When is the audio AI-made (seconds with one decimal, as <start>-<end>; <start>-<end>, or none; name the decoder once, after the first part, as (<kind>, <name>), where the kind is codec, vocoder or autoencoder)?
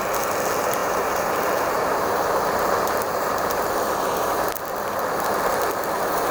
0.8-4.6 (vocoder, BigVGAN v2)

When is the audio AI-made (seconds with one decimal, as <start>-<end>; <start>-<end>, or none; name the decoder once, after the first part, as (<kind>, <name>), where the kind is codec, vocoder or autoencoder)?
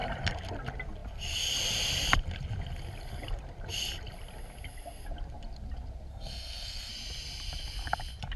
6.1-6.9 (codec, SNAC)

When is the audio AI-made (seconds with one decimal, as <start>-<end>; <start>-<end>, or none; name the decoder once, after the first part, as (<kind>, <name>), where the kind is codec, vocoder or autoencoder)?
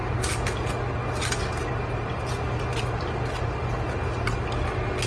2.7-4.5 (vocoder, BigVGAN v2)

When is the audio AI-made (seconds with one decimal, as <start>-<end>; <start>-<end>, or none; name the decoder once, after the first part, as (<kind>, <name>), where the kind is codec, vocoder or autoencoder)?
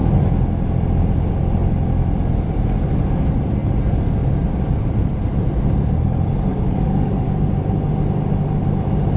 6.5-7.5 (codec, DAC)